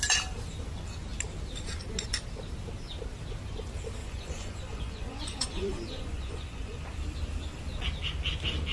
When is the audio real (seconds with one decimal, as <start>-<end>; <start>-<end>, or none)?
0.0-4.0; 6.8-8.7